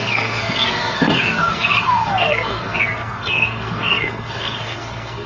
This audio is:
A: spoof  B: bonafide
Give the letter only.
A